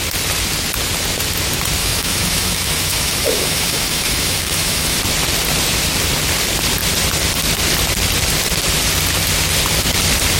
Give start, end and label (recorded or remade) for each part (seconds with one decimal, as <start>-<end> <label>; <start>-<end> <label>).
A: 0.0-1.8 recorded; 1.8-5.0 remade; 5.0-10.4 recorded